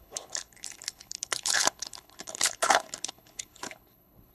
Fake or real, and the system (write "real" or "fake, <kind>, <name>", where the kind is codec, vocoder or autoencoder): fake, codec, HILCodec